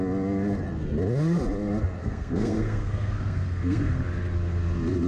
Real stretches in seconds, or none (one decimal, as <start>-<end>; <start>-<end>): 0.0-2.0; 4.0-5.1